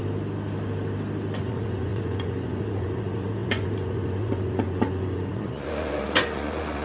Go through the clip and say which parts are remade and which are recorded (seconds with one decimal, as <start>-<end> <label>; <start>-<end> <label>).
0.0-1.4 recorded; 1.4-6.8 remade